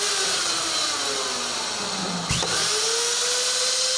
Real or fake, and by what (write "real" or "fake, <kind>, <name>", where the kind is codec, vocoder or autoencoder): real